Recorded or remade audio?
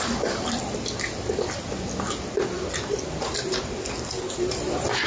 recorded